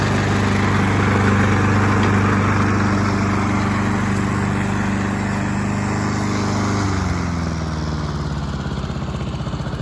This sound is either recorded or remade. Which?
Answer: recorded